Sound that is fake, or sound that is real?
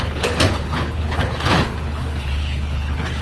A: fake